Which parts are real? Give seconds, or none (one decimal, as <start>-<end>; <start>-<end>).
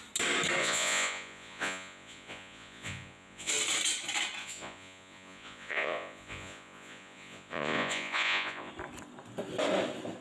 0.0-0.6; 3.5-4.4; 8.7-10.2